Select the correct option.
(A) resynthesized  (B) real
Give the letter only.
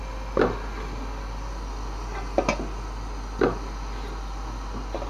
B